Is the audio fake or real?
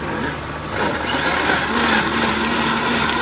real